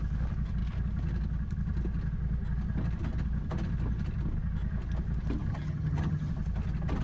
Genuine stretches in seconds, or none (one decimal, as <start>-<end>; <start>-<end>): 0.0-5.5; 6.3-7.0

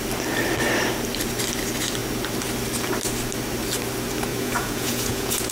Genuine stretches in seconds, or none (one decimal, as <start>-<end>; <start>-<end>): 0.0-4.3